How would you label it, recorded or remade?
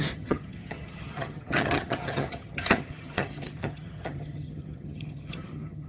remade